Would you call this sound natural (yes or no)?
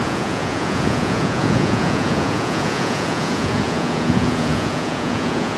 no